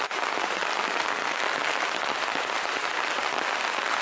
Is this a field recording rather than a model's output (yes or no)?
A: yes